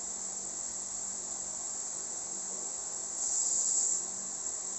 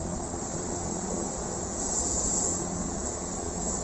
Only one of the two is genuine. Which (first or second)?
first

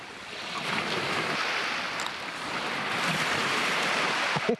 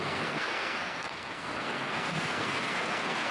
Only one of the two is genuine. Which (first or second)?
first